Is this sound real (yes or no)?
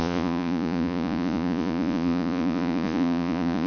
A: no